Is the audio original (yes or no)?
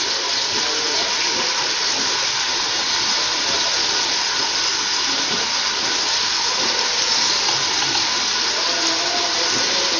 yes